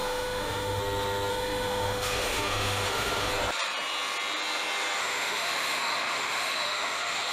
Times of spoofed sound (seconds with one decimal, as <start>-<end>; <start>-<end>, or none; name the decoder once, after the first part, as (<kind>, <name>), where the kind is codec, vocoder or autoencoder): 0.0-0.8 (autoencoder, DAC-VAE); 1.3-3.3; 5.0-7.3